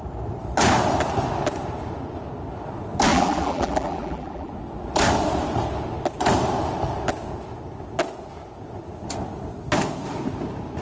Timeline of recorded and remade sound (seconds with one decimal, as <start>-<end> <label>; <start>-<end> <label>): 0.0-3.1 recorded; 3.1-4.5 remade; 4.5-10.8 recorded